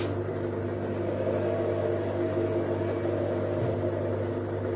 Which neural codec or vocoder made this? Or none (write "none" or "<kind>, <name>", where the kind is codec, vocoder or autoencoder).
none